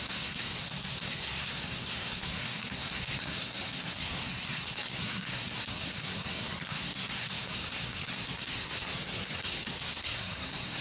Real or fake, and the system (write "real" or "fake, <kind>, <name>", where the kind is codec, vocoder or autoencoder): fake, codec, SNAC